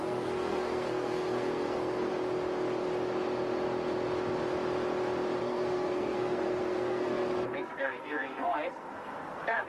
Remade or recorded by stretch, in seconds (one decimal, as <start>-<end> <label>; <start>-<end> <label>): 0.0-2.1 remade; 2.1-5.4 recorded; 5.4-9.7 remade